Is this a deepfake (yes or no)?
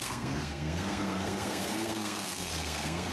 yes